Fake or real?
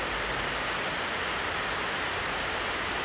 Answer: real